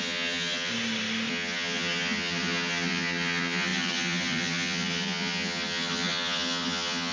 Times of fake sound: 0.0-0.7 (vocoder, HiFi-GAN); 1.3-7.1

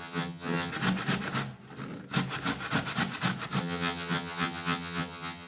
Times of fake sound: 0.0-0.7 (vocoder, HiFi-GAN); 3.6-5.5

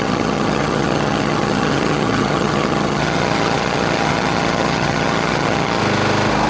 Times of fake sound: 0.0-5.8 (vocoder, HiFi-GAN)

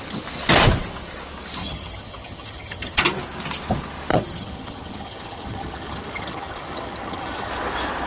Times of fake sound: 1.6-3.0 (vocoder, HiFi-GAN); 4.1-7.5

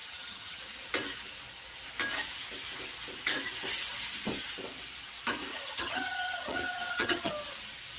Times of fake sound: 0.0-0.6 (vocoder, HiFi-GAN); 5.5-7.3

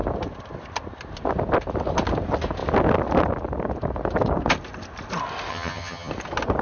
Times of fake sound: 5.5-6.1 (vocoder, HiFi-GAN)

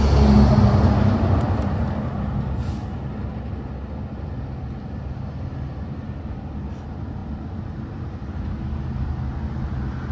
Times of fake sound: none

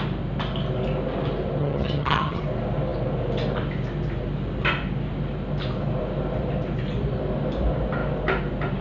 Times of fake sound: 1.6-2.4 (vocoder, HiFi-GAN)